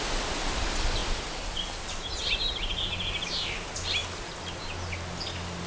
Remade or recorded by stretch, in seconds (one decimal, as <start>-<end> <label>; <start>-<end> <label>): 0.0-5.7 recorded